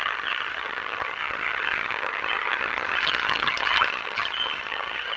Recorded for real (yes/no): no